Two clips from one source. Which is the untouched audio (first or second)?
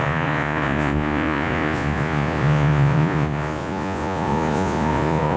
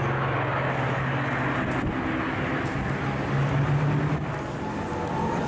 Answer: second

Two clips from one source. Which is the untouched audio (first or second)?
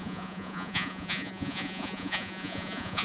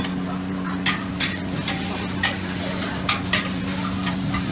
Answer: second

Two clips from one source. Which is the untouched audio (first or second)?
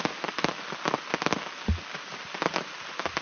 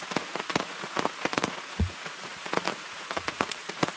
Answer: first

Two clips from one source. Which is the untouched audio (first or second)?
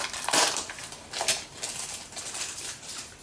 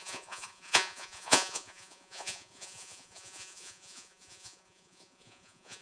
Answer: first